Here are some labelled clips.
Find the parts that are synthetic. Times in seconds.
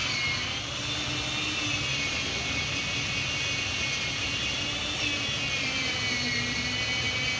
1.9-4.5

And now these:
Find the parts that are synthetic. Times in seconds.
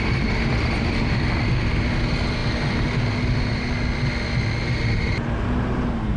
none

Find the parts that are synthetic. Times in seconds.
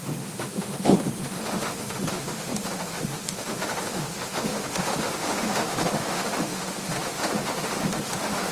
0.0-8.5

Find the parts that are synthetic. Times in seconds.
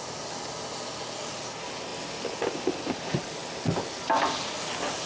none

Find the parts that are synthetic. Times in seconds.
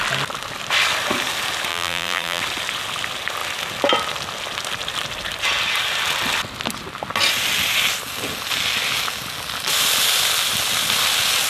1.7-2.4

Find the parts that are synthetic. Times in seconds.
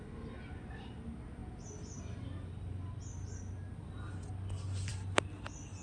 none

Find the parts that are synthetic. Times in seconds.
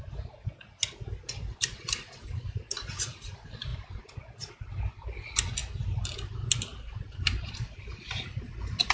3.7-4.8; 6.7-7.5